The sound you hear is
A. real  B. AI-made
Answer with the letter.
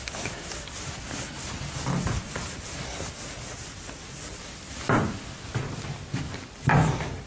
A